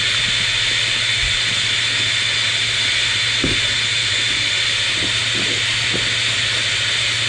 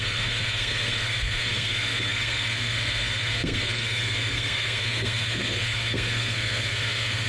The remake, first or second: second